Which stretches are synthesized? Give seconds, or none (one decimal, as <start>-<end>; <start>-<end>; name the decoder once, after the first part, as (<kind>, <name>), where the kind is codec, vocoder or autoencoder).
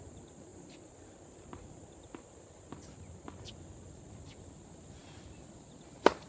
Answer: none